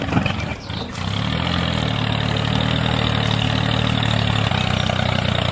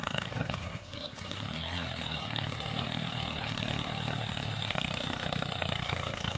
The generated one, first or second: second